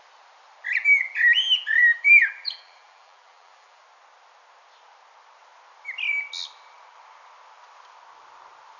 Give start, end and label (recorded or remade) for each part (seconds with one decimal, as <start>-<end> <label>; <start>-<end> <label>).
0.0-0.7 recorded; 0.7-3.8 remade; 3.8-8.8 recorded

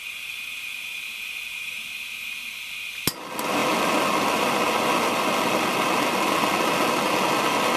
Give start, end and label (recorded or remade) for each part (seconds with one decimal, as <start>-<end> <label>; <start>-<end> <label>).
0.0-7.8 recorded

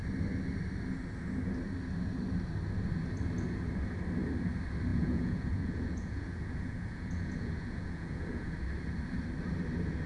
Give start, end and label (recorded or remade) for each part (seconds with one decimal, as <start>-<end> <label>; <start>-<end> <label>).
0.0-4.9 recorded; 4.9-8.6 remade; 8.6-10.1 recorded

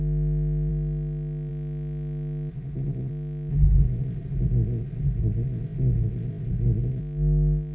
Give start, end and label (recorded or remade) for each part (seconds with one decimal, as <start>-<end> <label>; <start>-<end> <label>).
0.0-2.5 recorded; 2.5-3.1 remade; 3.1-3.5 recorded; 3.5-7.0 remade; 7.0-7.7 recorded

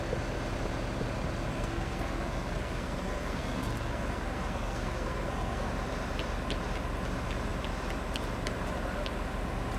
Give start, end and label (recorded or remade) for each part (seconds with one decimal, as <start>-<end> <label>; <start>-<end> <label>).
0.0-1.5 recorded; 1.5-5.7 remade; 5.7-9.8 recorded

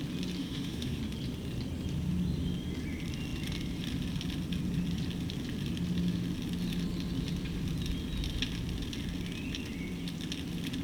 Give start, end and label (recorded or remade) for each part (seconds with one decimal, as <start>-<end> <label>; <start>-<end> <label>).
0.0-0.4 recorded; 0.4-1.0 remade; 1.0-10.8 recorded